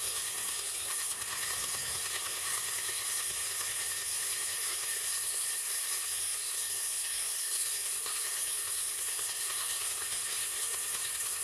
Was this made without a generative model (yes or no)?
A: no